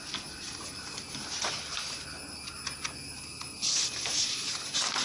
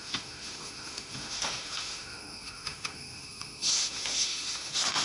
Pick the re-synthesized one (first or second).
second